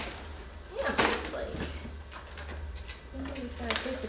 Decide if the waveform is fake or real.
real